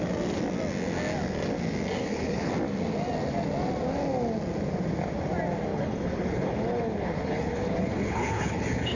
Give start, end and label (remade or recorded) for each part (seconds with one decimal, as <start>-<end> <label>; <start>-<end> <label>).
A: 0.0-2.0 recorded; 2.0-2.5 remade; 2.5-5.7 recorded; 5.7-9.0 remade